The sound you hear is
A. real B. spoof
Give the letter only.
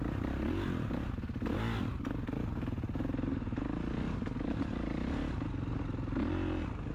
A